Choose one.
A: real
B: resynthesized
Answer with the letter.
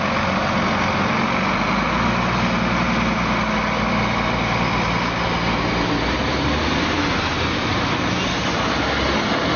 A